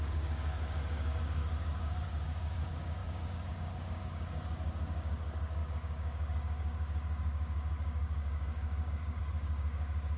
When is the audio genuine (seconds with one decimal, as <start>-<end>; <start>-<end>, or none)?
none